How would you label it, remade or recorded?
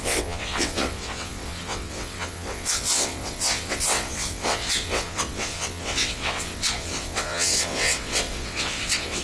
remade